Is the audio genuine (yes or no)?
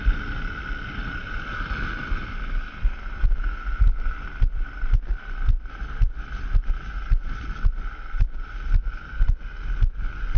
yes